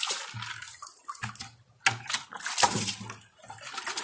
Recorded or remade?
recorded